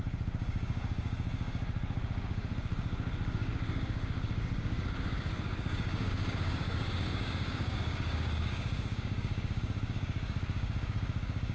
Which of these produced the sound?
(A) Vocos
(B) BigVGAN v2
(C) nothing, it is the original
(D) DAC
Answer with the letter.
D